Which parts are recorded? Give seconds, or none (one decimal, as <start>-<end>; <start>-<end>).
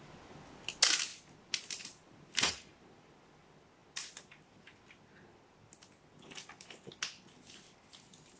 0.0-8.4